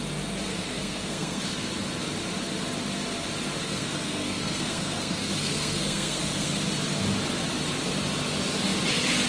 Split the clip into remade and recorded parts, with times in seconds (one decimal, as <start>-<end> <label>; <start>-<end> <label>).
0.0-0.5 recorded; 0.5-1.4 remade; 1.4-3.6 recorded; 3.6-6.5 remade; 6.5-9.3 recorded